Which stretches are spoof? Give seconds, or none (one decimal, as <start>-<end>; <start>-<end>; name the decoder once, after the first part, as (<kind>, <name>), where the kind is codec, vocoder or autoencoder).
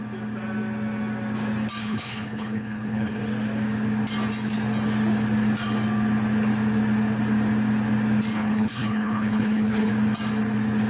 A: 1.8-3.2 (codec, HILCodec); 8.3-9.9